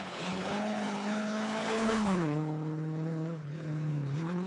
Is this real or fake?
fake